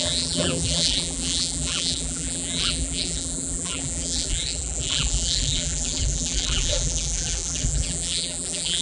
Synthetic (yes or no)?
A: yes